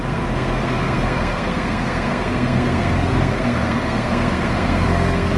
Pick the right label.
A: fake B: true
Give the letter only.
A